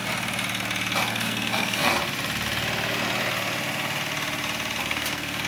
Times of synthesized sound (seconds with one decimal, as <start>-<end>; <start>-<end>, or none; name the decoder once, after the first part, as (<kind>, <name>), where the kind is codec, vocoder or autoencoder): 1.1-1.9 (codec, SNAC); 4.8-5.5